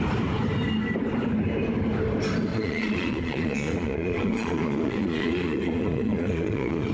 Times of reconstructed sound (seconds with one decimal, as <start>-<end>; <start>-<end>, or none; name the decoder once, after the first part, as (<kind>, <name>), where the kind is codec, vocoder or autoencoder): 2.5-6.9 (vocoder, Vocos)

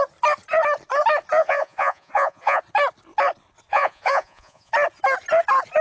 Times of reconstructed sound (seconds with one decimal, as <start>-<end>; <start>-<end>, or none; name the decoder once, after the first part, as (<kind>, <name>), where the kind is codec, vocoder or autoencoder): 1.4-2.6 (vocoder, Vocos); 3.7-4.7